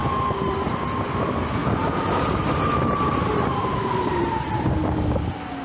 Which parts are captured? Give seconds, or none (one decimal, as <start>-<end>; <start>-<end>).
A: 0.0-1.6; 4.4-5.6